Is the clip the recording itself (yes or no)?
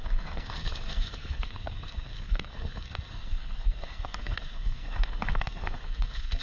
no